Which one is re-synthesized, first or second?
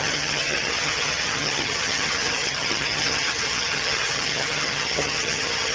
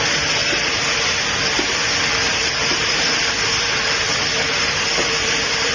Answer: first